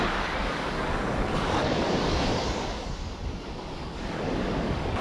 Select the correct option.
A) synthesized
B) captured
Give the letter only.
A